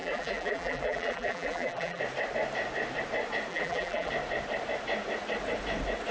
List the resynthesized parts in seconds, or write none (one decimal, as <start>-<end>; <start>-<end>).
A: 0.0-2.0; 3.5-4.1